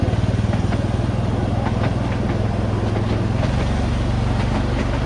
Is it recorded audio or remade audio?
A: recorded